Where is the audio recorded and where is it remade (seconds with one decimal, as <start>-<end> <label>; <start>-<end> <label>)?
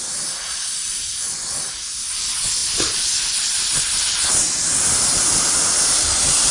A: 0.0-2.6 recorded; 2.6-4.0 remade; 4.0-6.5 recorded